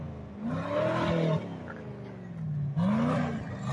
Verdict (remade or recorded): recorded